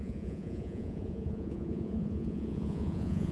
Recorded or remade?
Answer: remade